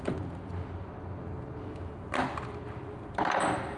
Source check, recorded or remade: remade